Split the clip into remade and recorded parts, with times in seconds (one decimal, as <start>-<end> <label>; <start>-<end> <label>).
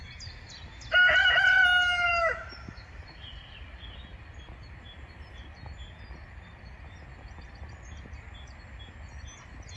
0.0-9.8 recorded